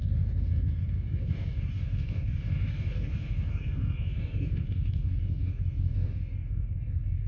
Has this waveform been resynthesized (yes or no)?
yes